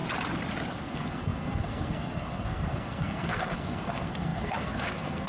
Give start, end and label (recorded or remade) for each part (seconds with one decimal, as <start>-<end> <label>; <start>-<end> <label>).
0.0-0.7 recorded; 0.7-5.3 remade